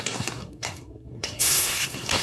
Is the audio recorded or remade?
remade